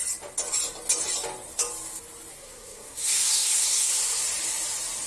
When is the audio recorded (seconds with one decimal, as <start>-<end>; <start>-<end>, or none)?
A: 0.0-2.3; 4.2-5.1